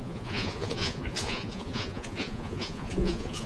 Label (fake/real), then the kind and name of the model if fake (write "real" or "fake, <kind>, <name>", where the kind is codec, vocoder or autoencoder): fake, vocoder, Vocos